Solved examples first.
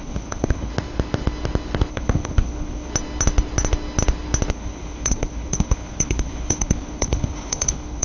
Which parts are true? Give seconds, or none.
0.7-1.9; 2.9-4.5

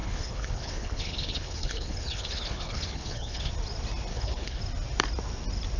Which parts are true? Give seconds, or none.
3.5-4.1; 4.6-5.8

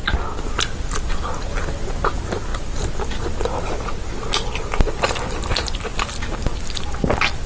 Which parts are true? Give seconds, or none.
0.0-7.5

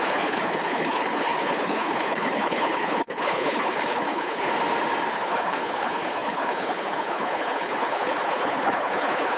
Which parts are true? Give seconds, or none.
4.5-5.1